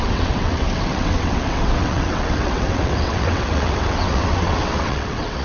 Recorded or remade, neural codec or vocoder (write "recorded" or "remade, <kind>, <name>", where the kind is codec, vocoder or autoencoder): remade, vocoder, WaveNeXt